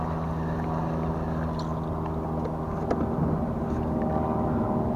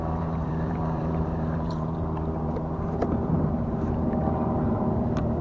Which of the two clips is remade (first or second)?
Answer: second